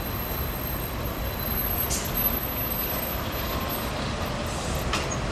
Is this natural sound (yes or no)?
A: yes